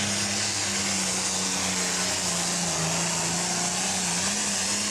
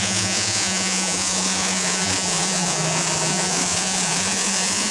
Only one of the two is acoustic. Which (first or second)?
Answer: first